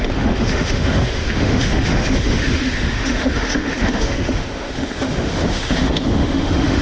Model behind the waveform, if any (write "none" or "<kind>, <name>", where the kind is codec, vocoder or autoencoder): autoencoder, DAC-VAE